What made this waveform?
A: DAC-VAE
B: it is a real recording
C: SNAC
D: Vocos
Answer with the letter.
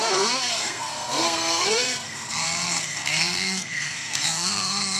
C